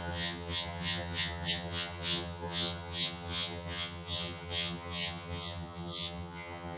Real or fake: fake